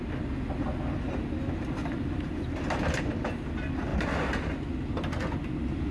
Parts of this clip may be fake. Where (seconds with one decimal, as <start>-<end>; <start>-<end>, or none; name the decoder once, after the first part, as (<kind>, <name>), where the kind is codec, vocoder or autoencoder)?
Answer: 1.8-2.6 (vocoder, BigVGAN v2); 3.9-4.7